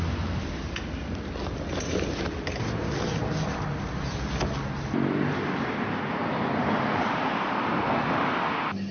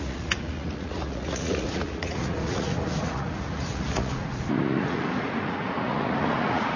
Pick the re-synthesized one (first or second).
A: second